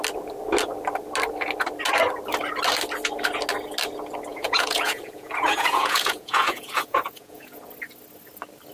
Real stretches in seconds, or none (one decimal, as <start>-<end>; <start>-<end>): 0.0-4.3; 7.6-8.7